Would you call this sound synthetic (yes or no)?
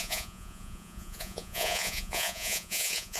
yes